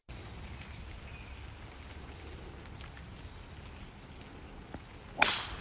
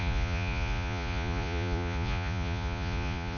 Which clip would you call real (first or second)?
first